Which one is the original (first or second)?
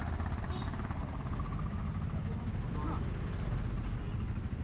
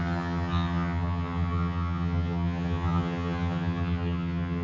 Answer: first